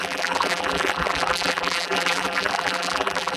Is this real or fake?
fake